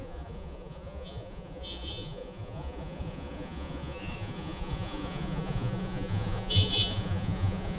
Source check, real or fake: fake